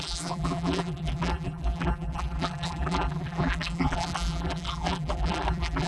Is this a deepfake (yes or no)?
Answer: yes